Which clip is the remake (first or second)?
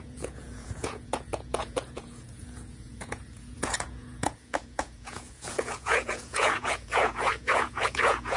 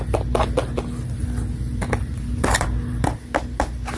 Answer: first